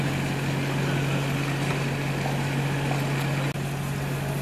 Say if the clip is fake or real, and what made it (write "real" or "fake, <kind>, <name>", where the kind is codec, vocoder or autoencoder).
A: real